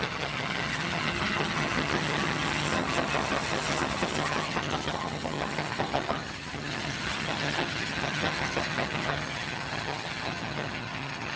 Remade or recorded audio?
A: remade